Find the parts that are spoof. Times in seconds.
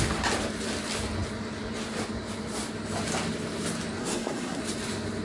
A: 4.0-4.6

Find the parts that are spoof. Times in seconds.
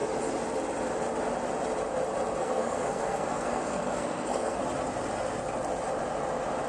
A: 2.4-4.6